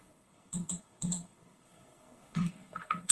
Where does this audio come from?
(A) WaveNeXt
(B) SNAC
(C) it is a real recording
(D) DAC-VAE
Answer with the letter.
B